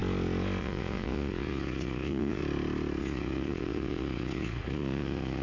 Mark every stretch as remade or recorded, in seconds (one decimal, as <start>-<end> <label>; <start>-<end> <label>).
0.0-0.6 recorded; 0.6-2.4 remade; 2.4-3.0 recorded; 3.0-5.4 remade